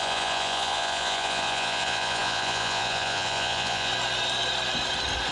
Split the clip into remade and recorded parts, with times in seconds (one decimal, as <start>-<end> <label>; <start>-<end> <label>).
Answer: 0.0-3.9 remade; 3.9-5.3 recorded